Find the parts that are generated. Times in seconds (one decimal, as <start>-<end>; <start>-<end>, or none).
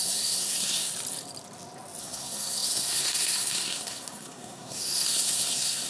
0.0-0.9; 2.0-5.9